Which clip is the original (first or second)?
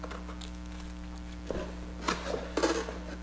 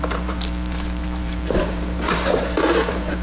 first